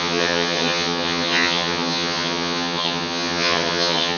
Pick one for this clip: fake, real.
fake